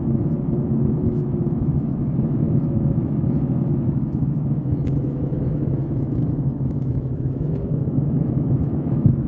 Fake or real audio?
fake